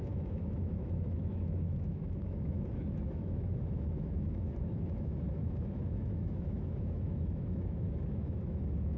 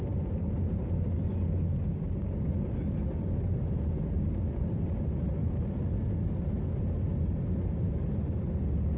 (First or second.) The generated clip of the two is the first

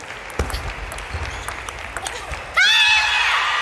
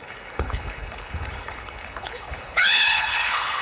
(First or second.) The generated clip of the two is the second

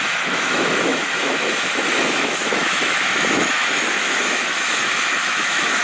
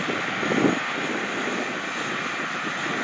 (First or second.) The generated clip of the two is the first